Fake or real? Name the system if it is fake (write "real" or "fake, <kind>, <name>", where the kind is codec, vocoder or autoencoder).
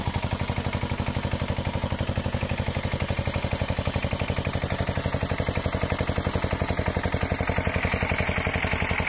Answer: real